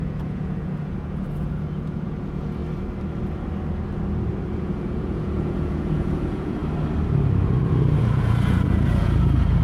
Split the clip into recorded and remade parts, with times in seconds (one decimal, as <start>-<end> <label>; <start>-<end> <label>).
0.0-2.6 remade; 2.6-4.6 recorded; 4.6-6.6 remade; 6.6-8.0 recorded; 8.0-9.6 remade